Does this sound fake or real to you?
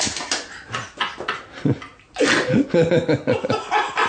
real